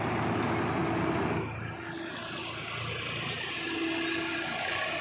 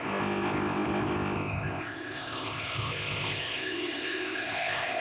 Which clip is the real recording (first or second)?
first